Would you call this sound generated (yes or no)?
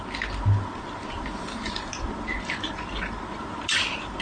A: no